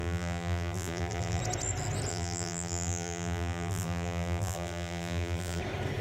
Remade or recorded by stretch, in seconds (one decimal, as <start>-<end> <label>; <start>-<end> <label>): 0.0-1.4 remade; 1.4-2.1 recorded; 2.1-5.6 remade; 5.6-6.0 recorded